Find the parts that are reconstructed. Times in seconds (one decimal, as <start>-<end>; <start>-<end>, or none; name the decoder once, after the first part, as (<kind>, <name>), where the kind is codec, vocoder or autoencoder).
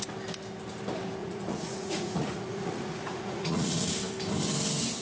1.2-3.9 (vocoder, Vocos)